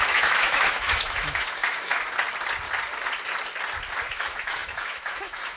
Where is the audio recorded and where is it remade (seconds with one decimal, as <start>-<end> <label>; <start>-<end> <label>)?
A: 0.0-1.9 remade; 1.9-4.1 recorded; 4.1-5.6 remade